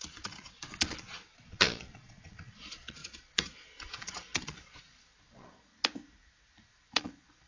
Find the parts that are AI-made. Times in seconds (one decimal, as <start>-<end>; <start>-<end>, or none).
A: 0.0-5.7; 6.7-7.5